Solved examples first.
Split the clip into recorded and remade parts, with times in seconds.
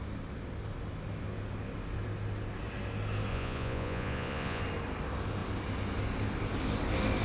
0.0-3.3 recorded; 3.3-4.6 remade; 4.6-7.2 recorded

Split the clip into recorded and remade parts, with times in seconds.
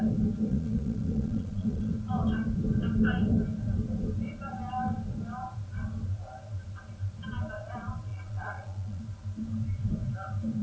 0.0-0.5 recorded; 0.5-1.9 remade; 1.9-8.1 recorded; 8.1-9.0 remade; 9.0-10.6 recorded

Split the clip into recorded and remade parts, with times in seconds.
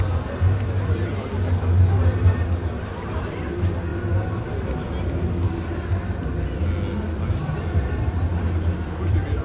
0.0-9.4 recorded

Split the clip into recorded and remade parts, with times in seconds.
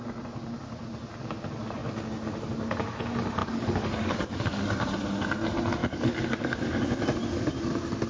0.0-3.4 recorded; 3.4-4.7 remade; 4.7-5.8 recorded; 5.8-6.8 remade; 6.8-8.1 recorded